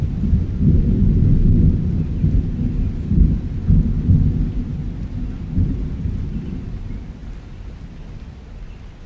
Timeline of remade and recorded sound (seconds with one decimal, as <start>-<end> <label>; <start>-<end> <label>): 0.0-9.1 recorded